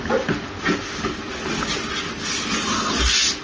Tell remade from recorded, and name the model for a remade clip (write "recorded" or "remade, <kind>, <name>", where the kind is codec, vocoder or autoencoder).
recorded